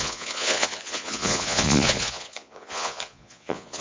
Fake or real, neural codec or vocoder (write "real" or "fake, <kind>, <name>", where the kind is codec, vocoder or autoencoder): fake, vocoder, Vocos